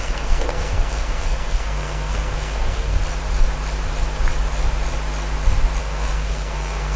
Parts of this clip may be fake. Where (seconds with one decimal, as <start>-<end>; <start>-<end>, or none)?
0.0-3.0; 5.8-7.0